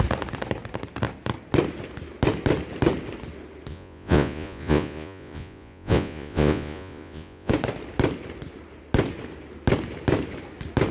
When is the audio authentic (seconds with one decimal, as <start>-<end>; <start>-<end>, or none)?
0.0-3.7; 7.5-10.9